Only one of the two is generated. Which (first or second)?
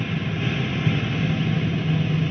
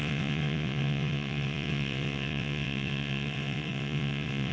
second